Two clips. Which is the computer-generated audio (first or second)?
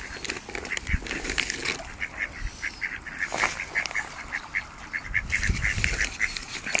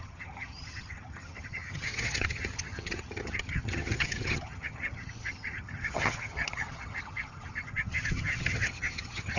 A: second